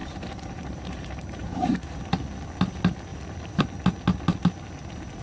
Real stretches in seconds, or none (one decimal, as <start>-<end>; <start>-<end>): 2.0-3.1; 3.6-5.2